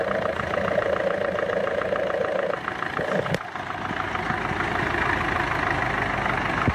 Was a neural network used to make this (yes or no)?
no